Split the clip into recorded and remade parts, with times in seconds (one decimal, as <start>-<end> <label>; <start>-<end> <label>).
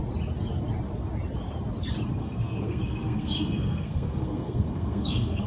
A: 0.0-2.2 recorded; 2.2-5.5 remade